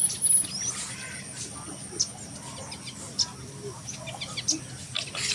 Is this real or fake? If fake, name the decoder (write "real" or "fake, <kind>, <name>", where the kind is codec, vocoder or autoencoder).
real